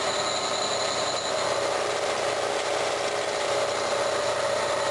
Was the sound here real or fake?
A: real